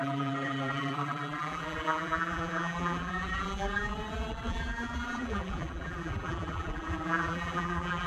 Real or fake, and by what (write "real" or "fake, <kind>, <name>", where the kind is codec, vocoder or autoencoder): fake, vocoder, BigVGAN v2